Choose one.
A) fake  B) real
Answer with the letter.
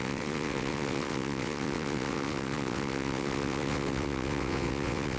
A